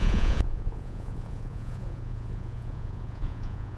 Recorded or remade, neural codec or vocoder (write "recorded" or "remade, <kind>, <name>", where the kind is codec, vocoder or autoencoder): remade, vocoder, Vocos